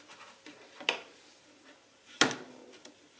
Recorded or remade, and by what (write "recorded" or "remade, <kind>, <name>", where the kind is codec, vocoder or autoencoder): recorded